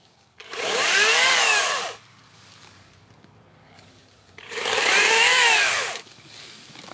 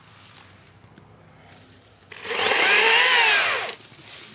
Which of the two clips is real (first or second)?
second